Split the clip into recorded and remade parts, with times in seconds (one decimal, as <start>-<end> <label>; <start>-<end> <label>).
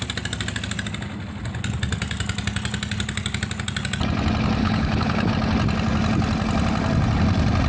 0.0-4.6 recorded; 4.6-5.3 remade; 5.3-7.7 recorded